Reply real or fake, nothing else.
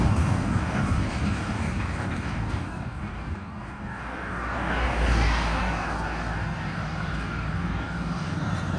fake